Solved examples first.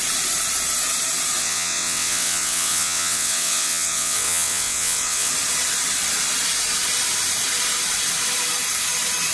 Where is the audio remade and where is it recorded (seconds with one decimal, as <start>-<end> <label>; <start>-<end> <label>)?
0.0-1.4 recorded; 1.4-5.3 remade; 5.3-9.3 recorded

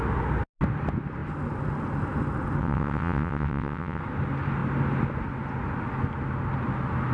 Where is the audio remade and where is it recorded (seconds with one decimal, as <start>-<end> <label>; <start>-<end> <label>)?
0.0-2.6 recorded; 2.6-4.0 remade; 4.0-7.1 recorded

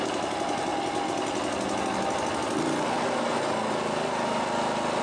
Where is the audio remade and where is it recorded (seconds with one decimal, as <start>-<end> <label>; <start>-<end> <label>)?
0.0-5.0 recorded

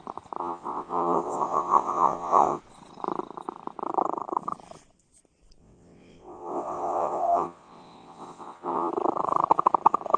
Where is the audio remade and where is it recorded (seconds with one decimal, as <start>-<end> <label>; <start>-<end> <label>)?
0.0-0.4 recorded; 0.4-2.6 remade; 2.6-5.6 recorded; 5.6-8.9 remade; 8.9-10.2 recorded

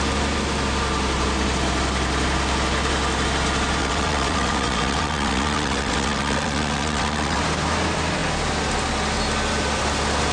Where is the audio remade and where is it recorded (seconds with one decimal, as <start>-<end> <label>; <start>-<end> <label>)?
0.0-3.8 recorded; 3.8-7.4 remade; 7.4-10.3 recorded